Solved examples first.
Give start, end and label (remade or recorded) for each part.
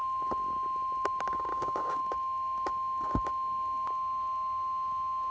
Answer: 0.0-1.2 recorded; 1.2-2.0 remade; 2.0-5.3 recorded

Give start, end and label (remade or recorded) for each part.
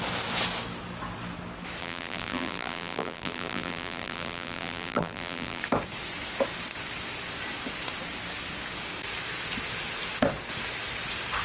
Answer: 0.0-1.8 recorded; 1.8-5.6 remade; 5.6-11.4 recorded